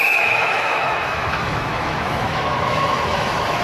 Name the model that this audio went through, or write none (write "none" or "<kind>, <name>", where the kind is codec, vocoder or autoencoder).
autoencoder, DAC-VAE